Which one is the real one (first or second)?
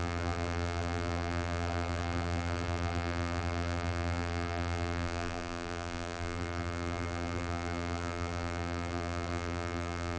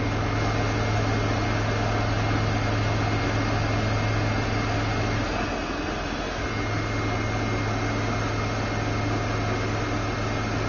second